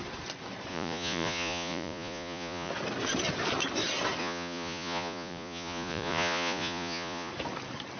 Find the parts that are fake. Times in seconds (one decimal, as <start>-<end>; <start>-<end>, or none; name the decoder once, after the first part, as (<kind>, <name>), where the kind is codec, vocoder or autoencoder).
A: 0.7-2.7 (vocoder, Vocos); 4.2-7.3